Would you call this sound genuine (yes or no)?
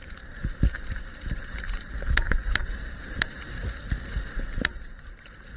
no